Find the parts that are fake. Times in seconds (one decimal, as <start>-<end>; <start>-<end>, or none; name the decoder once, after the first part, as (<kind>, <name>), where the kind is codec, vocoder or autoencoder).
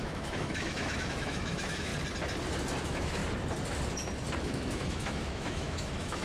0.0-1.9 (autoencoder, DAC-VAE); 2.8-3.2; 4.4-6.2